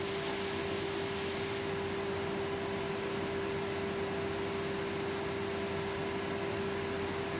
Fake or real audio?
real